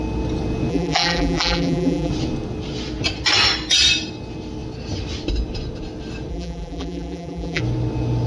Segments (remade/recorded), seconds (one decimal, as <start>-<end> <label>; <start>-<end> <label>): 0.0-0.7 recorded; 0.7-2.1 remade; 2.1-6.3 recorded; 6.3-7.6 remade; 7.6-8.3 recorded